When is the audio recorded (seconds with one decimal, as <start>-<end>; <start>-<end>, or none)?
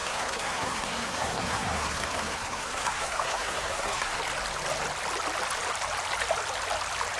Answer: 4.2-7.2